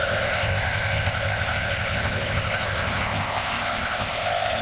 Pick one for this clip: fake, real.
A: fake